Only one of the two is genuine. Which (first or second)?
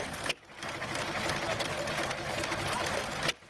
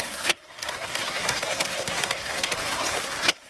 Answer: first